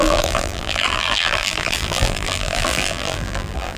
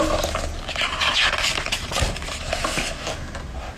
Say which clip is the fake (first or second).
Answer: first